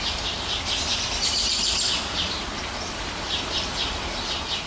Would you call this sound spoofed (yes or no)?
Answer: yes